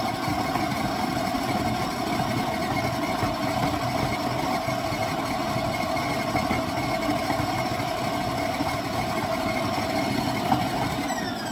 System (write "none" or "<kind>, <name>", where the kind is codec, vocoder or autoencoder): none